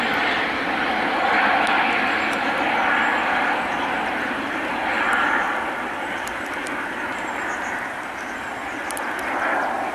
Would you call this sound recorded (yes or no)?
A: yes